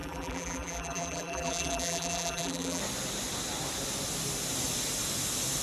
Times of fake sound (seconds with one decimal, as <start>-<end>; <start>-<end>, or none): 0.0-2.8